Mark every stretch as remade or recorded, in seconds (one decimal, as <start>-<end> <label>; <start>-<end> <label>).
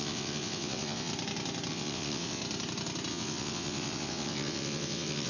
0.0-1.1 remade; 1.1-1.7 recorded; 1.7-2.4 remade; 2.4-3.1 recorded; 3.1-5.3 remade